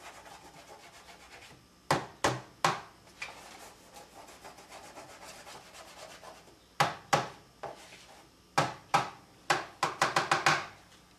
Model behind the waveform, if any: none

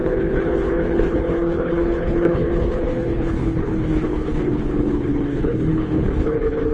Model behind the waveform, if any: codec, HILCodec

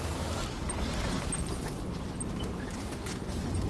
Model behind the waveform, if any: vocoder, BigVGAN v2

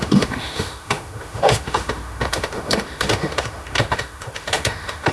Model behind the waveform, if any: autoencoder, DAC-VAE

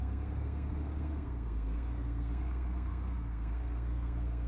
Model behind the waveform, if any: codec, SNAC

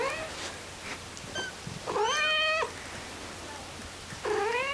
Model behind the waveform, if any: none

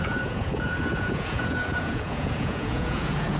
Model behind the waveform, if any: vocoder, Vocos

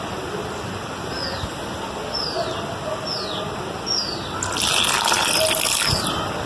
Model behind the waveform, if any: none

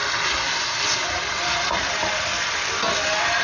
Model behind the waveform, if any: none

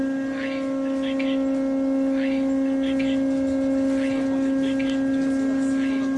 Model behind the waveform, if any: none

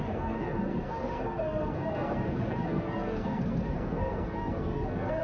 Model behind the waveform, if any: codec, SNAC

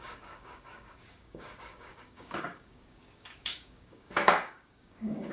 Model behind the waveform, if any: codec, DAC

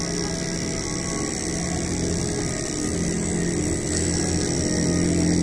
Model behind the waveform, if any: none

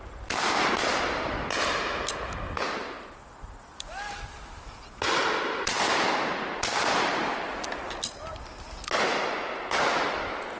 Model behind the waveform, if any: none